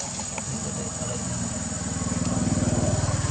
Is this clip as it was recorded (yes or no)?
yes